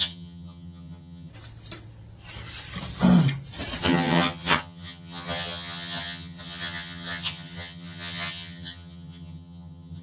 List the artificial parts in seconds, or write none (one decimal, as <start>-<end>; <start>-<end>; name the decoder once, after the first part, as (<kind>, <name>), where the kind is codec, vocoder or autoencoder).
0.0-1.3 (vocoder, HiFi-GAN); 3.8-10.0

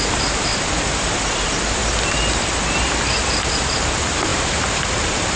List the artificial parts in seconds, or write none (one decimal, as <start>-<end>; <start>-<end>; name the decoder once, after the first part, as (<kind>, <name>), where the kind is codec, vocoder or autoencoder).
0.0-0.5 (vocoder, BigVGAN v2); 1.2-1.8; 3.5-5.4

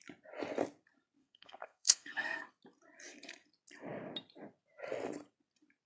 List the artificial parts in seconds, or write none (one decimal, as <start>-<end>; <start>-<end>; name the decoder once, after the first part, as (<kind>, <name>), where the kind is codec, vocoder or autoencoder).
1.2-2.5 (codec, SNAC)

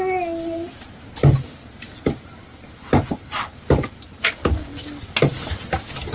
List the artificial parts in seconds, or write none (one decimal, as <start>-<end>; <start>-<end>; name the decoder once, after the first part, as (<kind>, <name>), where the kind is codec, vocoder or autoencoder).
none

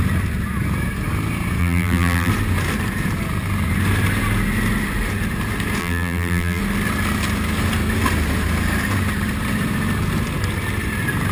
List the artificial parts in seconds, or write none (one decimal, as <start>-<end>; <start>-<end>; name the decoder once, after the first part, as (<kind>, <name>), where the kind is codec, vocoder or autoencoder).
1.6-2.3 (vocoder, BigVGAN v2); 5.8-6.6

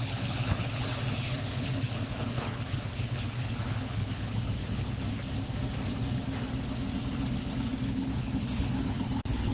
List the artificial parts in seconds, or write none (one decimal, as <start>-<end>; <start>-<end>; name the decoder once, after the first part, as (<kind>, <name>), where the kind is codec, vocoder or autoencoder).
0.0-5.3 (codec, HILCodec); 7.8-9.5

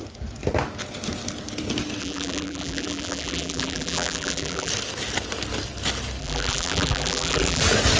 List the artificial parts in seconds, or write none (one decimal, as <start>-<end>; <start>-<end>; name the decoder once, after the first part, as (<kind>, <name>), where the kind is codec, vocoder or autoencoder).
2.0-4.7 (vocoder, BigVGAN v2); 6.2-7.6